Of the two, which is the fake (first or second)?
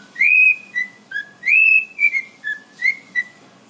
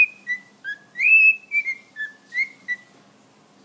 first